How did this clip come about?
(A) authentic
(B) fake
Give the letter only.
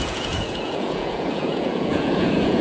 B